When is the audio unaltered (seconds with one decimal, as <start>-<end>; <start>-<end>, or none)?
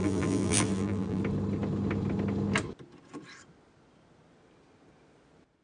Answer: 1.2-5.6